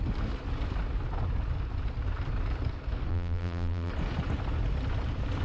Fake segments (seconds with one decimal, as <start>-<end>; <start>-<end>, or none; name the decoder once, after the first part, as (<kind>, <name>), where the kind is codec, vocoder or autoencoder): 3.1-3.9 (vocoder, BigVGAN v2)